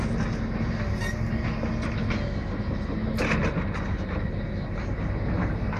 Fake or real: real